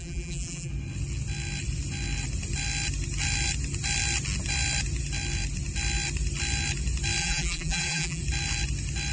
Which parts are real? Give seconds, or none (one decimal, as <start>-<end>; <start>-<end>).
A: 0.7-7.2; 8.2-9.1